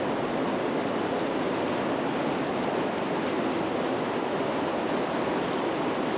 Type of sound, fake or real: real